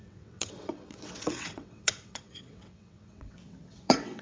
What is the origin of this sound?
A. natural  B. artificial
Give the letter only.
B